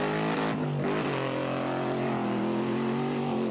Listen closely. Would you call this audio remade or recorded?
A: recorded